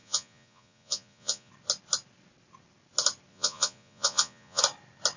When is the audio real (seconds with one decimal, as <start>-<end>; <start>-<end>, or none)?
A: 1.5-3.3; 4.6-5.2